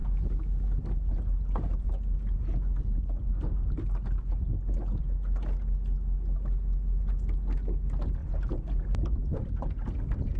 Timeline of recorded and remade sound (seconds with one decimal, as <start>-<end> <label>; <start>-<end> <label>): 0.0-8.2 recorded; 8.2-9.5 remade; 9.5-10.4 recorded